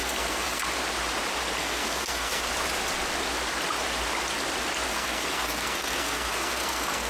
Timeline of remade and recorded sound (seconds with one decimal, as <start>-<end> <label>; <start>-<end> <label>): 0.0-0.6 remade; 0.6-1.6 recorded; 1.6-2.5 remade; 2.5-4.9 recorded; 4.9-7.1 remade